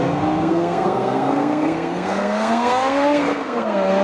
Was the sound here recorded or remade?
remade